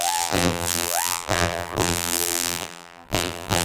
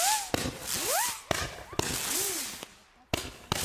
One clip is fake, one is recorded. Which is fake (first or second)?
first